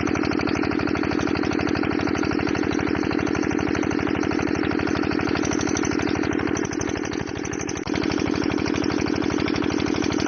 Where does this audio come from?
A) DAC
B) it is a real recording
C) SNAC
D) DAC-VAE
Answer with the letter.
B